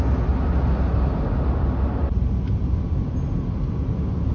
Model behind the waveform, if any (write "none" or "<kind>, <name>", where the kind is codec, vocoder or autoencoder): none